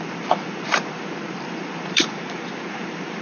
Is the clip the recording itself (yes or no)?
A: no